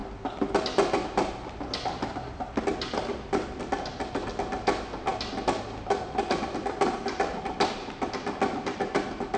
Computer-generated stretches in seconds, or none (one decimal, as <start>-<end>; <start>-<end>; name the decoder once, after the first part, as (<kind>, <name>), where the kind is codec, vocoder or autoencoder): none